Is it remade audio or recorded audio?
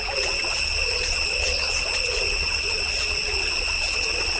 remade